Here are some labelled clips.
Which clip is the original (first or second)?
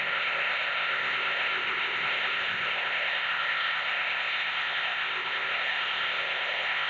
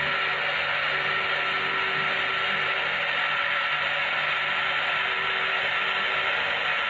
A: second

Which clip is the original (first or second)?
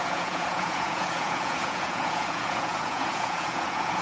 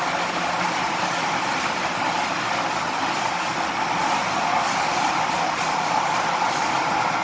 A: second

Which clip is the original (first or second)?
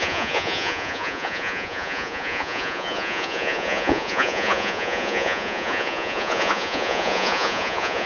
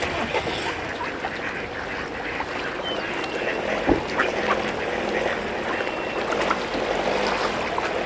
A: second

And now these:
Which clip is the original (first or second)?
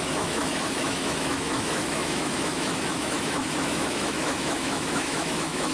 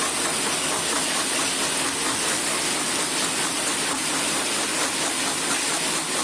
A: second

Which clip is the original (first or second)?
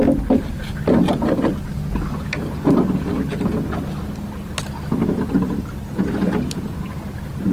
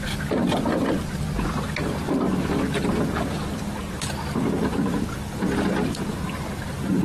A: first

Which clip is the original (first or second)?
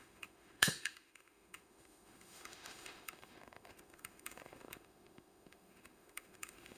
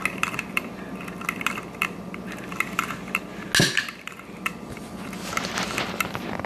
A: second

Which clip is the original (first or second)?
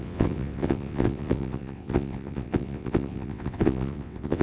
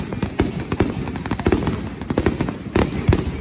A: second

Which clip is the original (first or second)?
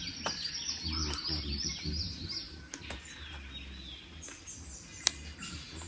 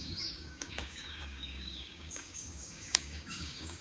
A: first